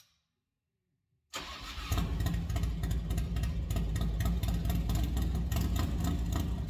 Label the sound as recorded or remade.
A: recorded